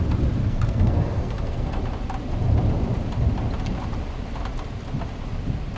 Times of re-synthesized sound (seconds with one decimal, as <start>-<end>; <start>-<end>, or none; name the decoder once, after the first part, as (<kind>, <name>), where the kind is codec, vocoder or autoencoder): 0.4-1.8 (codec, SNAC)